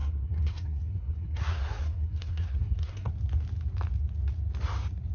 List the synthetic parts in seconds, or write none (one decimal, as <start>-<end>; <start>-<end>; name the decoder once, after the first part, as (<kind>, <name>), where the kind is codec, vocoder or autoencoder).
0.0-3.1 (codec, SNAC)